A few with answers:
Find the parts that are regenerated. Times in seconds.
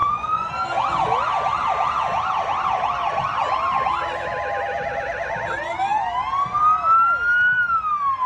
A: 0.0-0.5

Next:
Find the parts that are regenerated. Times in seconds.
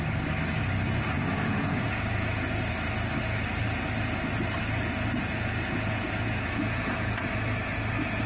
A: 1.3-2.7; 5.2-7.3